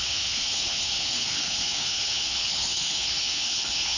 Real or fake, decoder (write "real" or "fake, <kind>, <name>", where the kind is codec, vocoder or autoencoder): fake, codec, HILCodec